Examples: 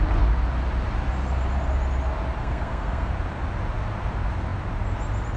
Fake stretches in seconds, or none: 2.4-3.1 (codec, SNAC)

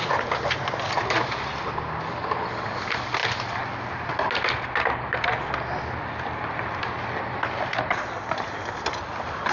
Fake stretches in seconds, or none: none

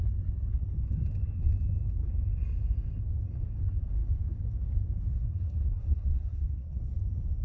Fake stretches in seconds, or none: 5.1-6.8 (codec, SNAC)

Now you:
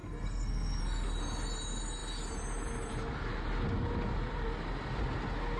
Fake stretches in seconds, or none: 0.0-0.8 (codec, SNAC)

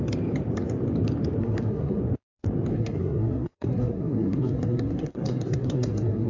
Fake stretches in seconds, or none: 1.4-2.0 (codec, SNAC); 2.7-6.3

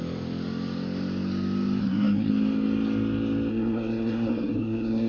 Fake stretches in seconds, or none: 1.8-2.3 (codec, SNAC); 3.5-5.1